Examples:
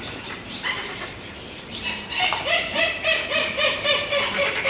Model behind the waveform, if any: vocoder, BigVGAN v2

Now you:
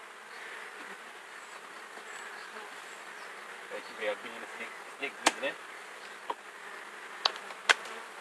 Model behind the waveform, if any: none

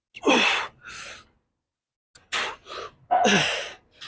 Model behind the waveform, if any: none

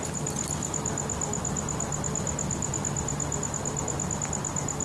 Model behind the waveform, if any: none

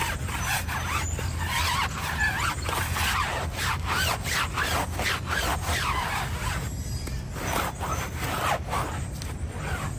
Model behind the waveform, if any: none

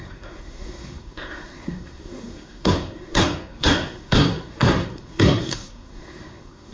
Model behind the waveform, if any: codec, SNAC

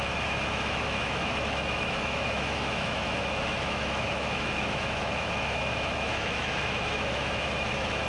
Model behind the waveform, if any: autoencoder, DAC-VAE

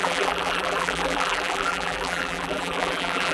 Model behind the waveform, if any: vocoder, BigVGAN v2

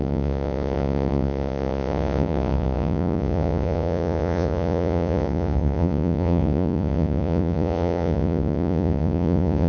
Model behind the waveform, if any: vocoder, Vocos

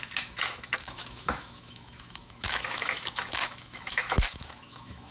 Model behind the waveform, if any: autoencoder, DAC-VAE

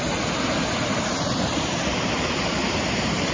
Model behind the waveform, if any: vocoder, BigVGAN v2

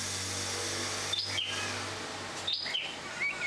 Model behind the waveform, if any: none